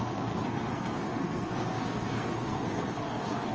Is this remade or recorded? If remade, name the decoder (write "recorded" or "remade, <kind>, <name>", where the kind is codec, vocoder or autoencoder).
remade, codec, SNAC